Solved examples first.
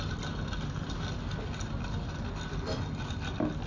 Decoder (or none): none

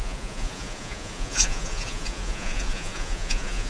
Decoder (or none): vocoder, Vocos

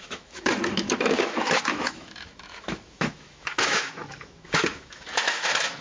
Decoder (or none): autoencoder, DAC-VAE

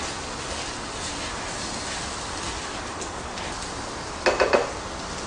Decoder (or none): none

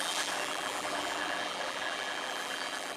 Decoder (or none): vocoder, BigVGAN v2